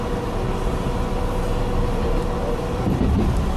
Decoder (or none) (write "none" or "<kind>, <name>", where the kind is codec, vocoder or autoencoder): none